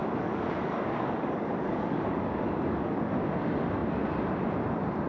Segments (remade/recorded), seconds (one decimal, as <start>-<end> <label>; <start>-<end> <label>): 0.0-3.1 remade; 3.1-5.1 recorded

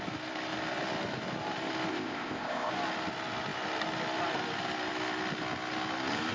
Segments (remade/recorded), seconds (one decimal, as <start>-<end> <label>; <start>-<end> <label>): 0.0-1.9 recorded; 1.9-2.7 remade; 2.7-6.3 recorded

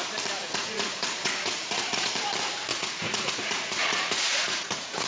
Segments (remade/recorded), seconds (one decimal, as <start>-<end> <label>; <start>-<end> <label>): 0.0-0.4 recorded; 0.4-2.1 remade; 2.1-2.7 recorded; 2.7-5.1 remade

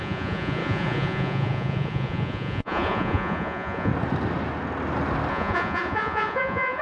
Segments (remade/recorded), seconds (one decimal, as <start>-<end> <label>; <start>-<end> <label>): 0.0-3.9 remade; 3.9-5.3 recorded; 5.3-6.8 remade

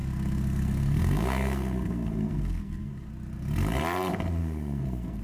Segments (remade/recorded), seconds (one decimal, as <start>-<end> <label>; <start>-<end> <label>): 0.0-3.1 remade; 3.1-4.4 recorded; 4.4-5.2 remade